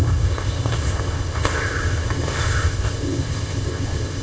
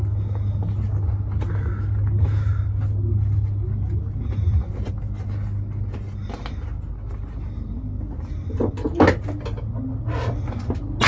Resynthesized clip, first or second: first